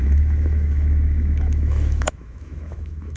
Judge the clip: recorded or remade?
remade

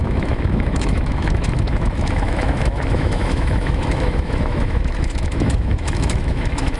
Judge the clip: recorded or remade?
remade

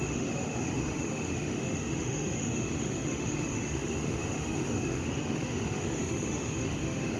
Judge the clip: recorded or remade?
remade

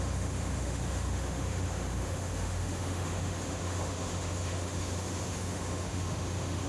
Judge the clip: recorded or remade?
remade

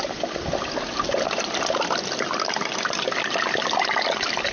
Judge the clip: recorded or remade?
recorded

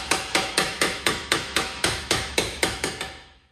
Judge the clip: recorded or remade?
remade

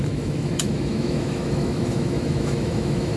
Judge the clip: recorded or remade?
remade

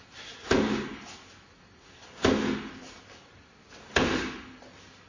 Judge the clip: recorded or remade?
recorded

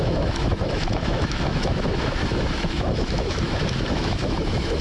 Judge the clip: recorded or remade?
remade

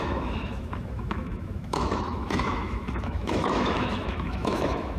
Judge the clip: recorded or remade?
remade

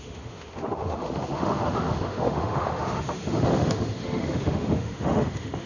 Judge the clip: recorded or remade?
remade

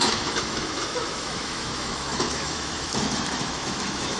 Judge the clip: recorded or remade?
remade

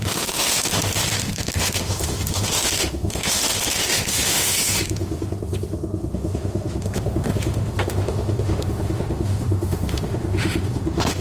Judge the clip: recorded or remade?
remade